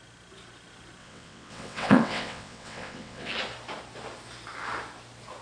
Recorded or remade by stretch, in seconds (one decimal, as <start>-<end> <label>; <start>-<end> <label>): 0.0-1.0 recorded; 1.0-3.3 remade; 3.3-5.4 recorded